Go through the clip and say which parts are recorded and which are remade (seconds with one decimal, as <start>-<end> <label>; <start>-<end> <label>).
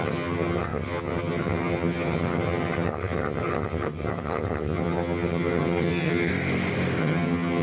0.0-6.3 remade; 6.3-7.0 recorded; 7.0-7.6 remade